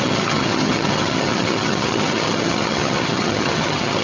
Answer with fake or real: fake